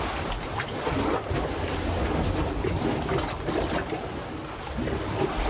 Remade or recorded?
recorded